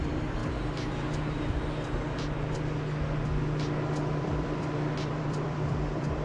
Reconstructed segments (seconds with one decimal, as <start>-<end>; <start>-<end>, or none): 0.0-0.4; 4.1-6.2